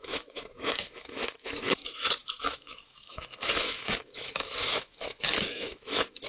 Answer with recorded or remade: remade